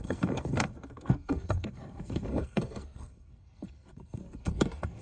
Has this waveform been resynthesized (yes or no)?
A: yes